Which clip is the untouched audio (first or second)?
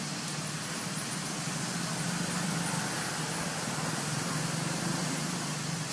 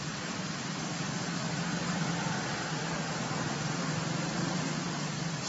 first